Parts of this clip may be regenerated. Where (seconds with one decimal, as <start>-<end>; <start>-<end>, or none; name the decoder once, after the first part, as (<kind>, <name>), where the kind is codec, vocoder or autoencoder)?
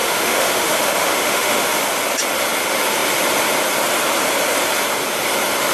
0.0-1.8 (autoencoder, DAC-VAE)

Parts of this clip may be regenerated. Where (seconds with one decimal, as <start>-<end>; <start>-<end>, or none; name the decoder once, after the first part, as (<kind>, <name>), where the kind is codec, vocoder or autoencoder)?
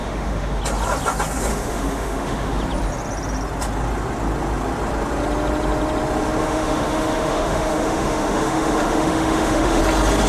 0.0-0.6 (autoencoder, DAC-VAE); 1.5-2.6; 6.4-9.8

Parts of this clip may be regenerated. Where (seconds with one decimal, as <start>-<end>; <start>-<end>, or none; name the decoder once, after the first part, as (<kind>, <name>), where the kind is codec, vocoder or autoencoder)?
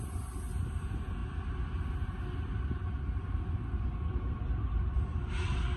none